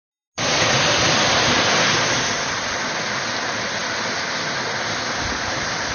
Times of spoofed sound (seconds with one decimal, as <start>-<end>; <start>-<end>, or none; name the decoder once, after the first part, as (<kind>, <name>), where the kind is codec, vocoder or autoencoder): none